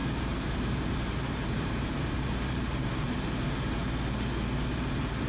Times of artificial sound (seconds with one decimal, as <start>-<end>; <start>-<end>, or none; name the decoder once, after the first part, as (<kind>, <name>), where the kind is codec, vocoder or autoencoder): 0.0-3.8 (vocoder, BigVGAN v2); 4.7-5.3